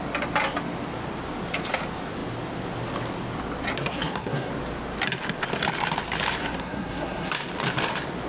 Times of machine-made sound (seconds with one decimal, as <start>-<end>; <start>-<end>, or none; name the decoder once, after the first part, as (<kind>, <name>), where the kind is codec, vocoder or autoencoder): 3.9-4.5 (codec, SNAC); 6.4-7.3